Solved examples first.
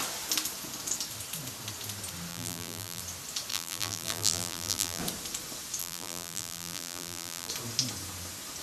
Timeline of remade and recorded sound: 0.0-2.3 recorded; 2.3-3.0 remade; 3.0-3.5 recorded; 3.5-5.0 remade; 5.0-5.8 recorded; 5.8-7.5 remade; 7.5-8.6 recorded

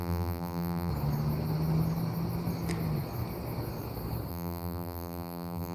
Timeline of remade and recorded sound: 0.0-0.9 remade; 0.9-4.3 recorded; 4.3-5.7 remade

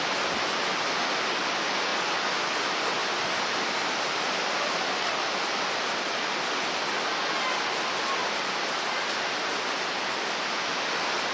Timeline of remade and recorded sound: 0.0-3.0 recorded; 3.0-5.9 remade; 5.9-11.3 recorded

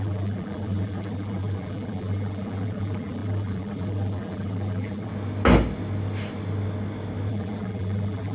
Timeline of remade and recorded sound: 0.0-5.1 remade; 5.1-7.3 recorded; 7.3-8.3 remade

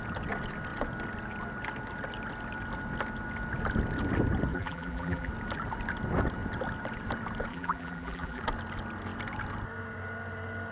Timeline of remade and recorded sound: 0.0-4.5 recorded; 4.5-5.3 remade; 5.3-7.5 recorded; 7.5-8.4 remade; 8.4-10.7 recorded

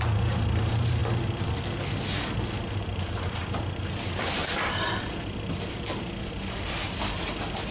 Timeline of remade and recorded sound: 0.0-1.0 remade; 1.0-2.8 recorded; 2.8-7.7 remade